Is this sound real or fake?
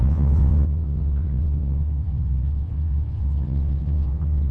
fake